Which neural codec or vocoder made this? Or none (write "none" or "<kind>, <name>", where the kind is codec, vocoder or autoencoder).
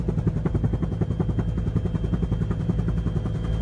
none